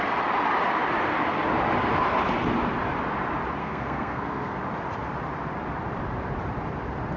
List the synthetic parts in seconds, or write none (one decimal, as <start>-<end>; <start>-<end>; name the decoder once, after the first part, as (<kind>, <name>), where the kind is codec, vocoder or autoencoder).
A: 3.6-4.6 (codec, SNAC)